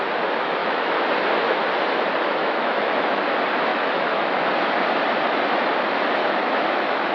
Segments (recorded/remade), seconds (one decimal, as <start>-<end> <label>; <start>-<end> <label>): 0.0-0.6 recorded; 0.6-1.1 remade; 1.1-2.4 recorded; 2.4-3.2 remade; 3.2-3.7 recorded; 3.7-4.5 remade; 4.5-6.2 recorded; 6.2-7.1 remade